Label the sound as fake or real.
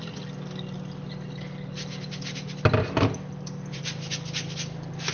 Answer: real